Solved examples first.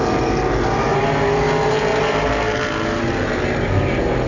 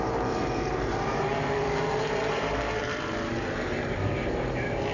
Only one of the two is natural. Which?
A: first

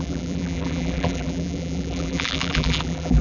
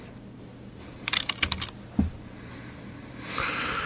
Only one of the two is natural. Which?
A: second